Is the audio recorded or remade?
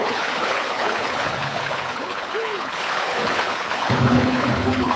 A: remade